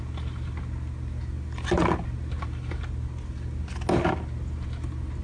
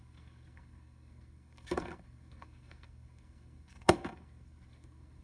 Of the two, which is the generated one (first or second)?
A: second